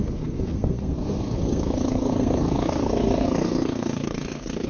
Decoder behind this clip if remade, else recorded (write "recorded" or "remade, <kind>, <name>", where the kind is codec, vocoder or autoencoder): remade, codec, SNAC